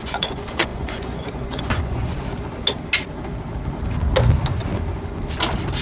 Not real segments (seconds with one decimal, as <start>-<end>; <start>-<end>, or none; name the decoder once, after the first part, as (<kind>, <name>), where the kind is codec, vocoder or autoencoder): 0.0-2.1 (vocoder, Vocos)